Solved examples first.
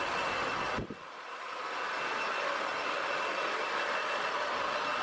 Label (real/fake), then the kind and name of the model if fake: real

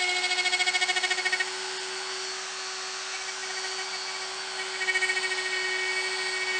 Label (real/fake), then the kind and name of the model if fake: real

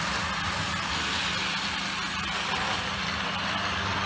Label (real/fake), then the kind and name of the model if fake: real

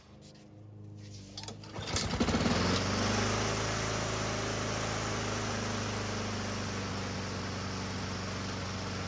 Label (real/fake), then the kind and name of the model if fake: real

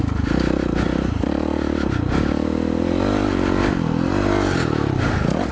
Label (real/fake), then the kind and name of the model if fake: real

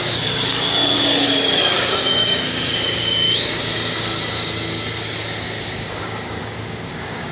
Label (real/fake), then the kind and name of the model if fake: fake, codec, DAC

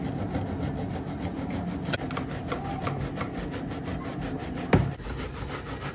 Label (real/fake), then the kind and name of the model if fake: real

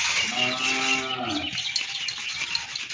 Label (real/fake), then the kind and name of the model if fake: real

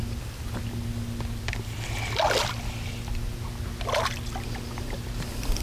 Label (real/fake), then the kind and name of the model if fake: real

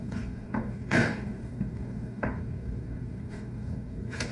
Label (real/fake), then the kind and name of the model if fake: fake, codec, DAC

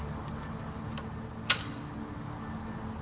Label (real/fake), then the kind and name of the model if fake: real